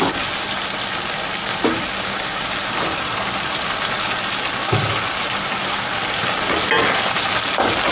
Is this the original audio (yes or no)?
yes